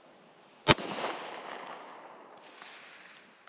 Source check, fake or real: real